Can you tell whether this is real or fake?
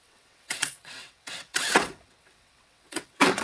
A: fake